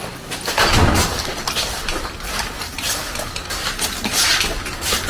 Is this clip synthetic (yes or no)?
no